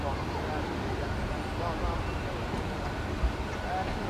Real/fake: real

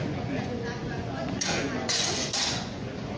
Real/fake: fake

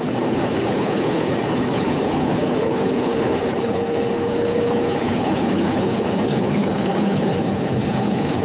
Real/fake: fake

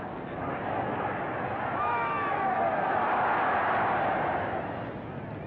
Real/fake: real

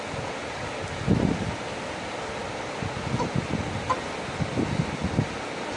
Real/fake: real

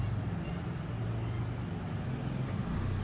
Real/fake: real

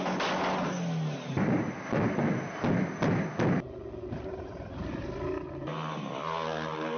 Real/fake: real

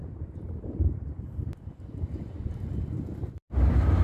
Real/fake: real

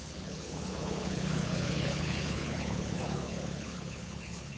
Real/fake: fake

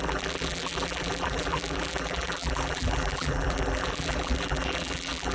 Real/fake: fake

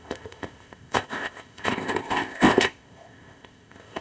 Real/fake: fake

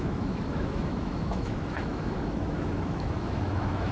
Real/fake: fake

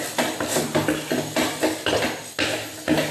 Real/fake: real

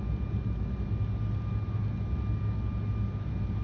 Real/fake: real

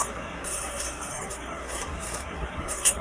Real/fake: fake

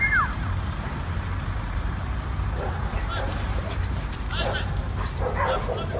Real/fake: fake